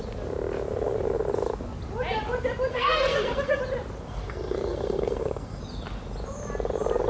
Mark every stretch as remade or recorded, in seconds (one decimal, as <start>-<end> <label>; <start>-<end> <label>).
0.0-2.7 recorded; 2.7-3.6 remade; 3.6-4.1 recorded; 4.1-5.6 remade; 5.6-7.1 recorded